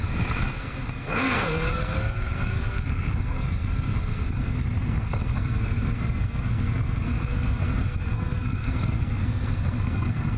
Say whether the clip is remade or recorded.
remade